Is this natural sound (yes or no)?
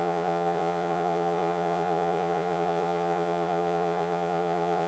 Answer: no